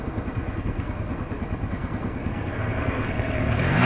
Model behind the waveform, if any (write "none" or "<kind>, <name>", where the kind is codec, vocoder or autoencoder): codec, SNAC